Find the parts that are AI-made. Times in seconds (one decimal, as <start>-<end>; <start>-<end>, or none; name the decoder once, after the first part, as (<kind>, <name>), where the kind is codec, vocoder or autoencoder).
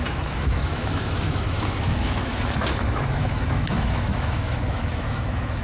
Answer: 0.0-5.6 (autoencoder, DAC-VAE)